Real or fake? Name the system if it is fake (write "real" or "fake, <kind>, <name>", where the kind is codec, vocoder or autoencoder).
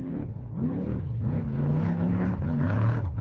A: fake, codec, HILCodec